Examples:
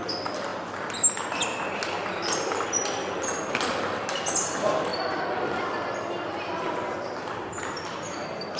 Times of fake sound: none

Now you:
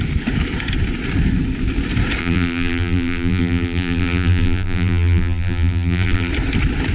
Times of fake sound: 2.2-6.3 (vocoder, BigVGAN v2)

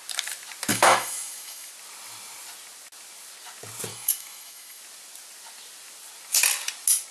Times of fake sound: 0.7-1.7 (autoencoder, DAC-VAE); 3.9-4.8

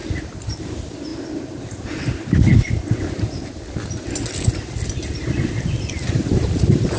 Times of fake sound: 0.6-1.1 (vocoder, BigVGAN v2); 2.1-2.5; 5.9-7.0

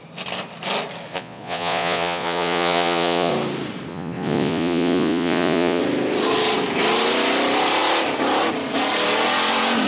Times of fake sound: 1.1-3.3 (vocoder, Vocos); 3.9-5.8

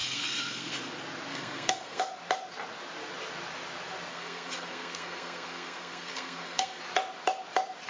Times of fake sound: 0.0-0.8 (codec, SNAC); 1.3-2.0; 4.1-6.8

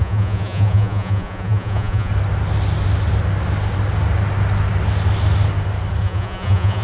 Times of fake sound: 0.0-2.1 (vocoder, Vocos); 6.0-6.8